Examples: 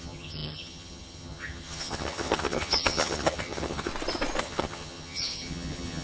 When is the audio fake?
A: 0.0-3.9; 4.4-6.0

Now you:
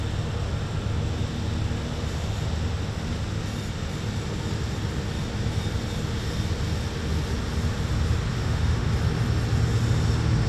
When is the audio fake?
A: 8.3-8.9

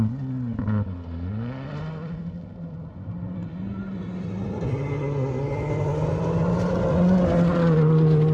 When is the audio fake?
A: none

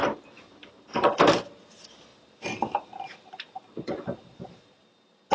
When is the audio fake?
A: 0.0-1.2; 2.1-5.3

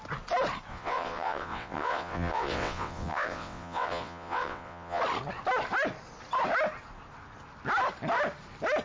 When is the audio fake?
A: 0.7-5.0